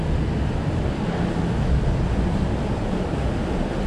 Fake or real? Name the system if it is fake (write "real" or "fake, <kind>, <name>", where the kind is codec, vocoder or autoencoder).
real